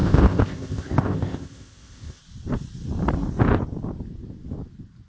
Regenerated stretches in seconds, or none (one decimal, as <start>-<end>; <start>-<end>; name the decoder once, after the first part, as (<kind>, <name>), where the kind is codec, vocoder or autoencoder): 0.0-2.2 (codec, ZipCodec)

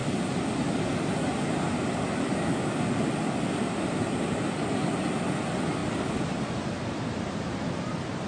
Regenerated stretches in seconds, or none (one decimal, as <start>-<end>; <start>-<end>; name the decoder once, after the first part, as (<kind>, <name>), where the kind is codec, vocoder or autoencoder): none

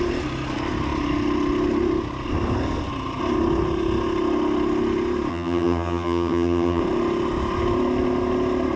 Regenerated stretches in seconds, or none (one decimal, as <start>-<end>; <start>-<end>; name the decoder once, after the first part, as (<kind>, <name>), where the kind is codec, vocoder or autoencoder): 5.3-6.8 (vocoder, HiFi-GAN)

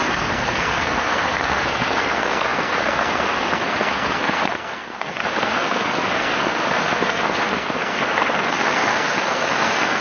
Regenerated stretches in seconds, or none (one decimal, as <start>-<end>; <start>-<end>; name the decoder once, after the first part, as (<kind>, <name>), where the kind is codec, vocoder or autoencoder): 0.0-10.0 (codec, SNAC)

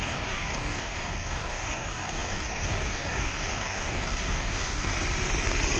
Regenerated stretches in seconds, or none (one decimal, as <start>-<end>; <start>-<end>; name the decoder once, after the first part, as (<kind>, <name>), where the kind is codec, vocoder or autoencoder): 0.0-4.9 (codec, DAC)